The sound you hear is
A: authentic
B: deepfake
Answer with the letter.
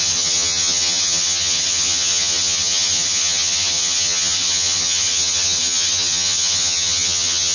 B